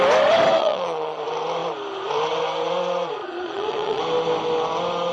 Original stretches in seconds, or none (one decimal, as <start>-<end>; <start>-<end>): 0.0-0.6; 1.2-3.2; 4.0-5.1